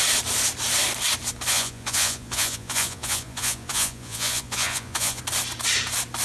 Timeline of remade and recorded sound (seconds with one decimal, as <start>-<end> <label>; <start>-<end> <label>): 0.0-1.5 recorded; 1.5-5.2 remade; 5.2-6.2 recorded